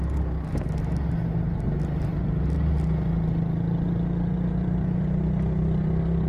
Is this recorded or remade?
recorded